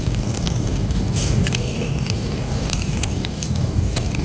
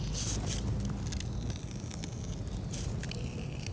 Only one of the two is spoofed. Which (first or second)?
first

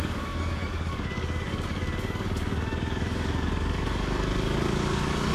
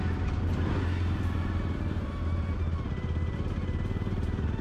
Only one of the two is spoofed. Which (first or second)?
first